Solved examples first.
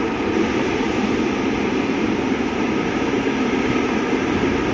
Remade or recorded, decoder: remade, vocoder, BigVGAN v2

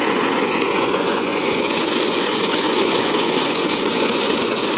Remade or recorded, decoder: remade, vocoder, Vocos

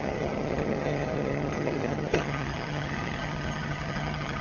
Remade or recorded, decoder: remade, vocoder, HiFi-GAN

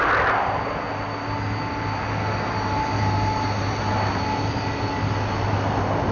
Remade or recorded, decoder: recorded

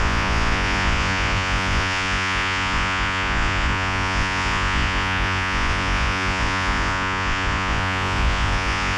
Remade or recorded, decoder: remade, vocoder, Vocos